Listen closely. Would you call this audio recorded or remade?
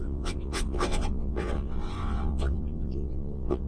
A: remade